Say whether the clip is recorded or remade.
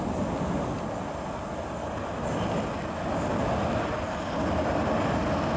recorded